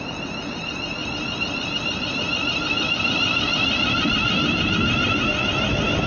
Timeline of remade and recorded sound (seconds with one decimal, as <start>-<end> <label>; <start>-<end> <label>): 0.0-1.0 recorded; 1.0-4.7 remade; 4.7-6.1 recorded